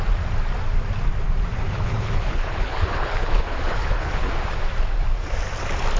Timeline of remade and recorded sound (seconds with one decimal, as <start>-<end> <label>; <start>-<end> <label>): 0.0-1.5 recorded; 1.5-4.3 remade; 4.3-6.0 recorded